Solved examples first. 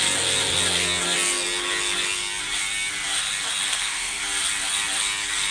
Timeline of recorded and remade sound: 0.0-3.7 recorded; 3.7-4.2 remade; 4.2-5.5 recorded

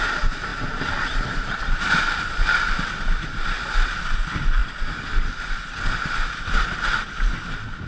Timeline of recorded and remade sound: 0.0-7.9 recorded

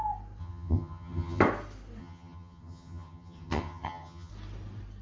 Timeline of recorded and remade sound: 0.0-0.4 recorded; 0.4-1.4 remade; 1.4-2.0 recorded; 2.0-4.3 remade; 4.3-5.0 recorded

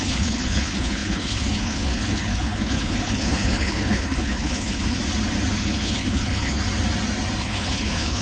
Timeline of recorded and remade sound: 0.0-5.0 remade; 5.0-5.5 recorded; 5.5-6.6 remade; 6.6-7.4 recorded; 7.4-8.2 remade

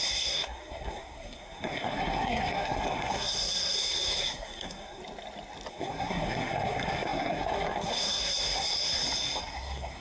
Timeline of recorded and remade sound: 0.0-5.0 remade; 5.0-5.7 recorded; 5.7-8.9 remade; 8.9-9.4 recorded; 9.4-10.0 remade

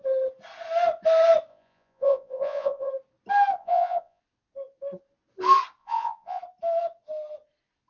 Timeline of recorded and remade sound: 0.0-1.5 recorded; 1.5-2.9 remade; 2.9-3.6 recorded; 3.6-4.2 remade; 4.2-5.8 recorded; 5.8-6.4 remade; 6.4-7.9 recorded